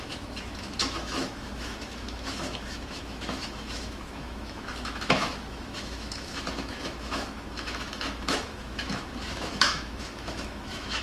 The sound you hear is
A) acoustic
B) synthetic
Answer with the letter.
B